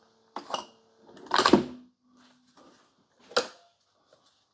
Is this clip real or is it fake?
real